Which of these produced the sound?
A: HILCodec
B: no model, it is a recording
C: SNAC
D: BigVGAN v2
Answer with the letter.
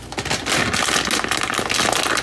B